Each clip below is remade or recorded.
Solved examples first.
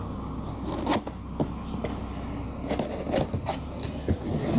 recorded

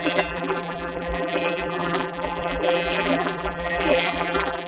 remade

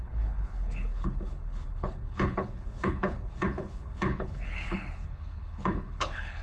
remade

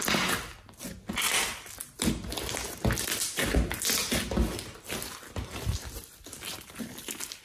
recorded